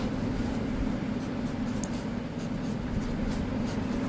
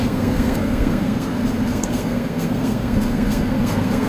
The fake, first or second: second